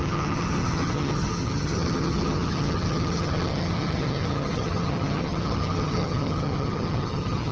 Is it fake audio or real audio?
fake